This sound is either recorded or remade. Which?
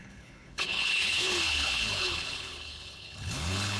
remade